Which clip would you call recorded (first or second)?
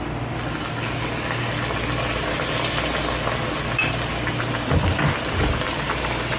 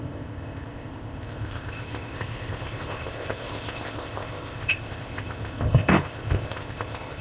first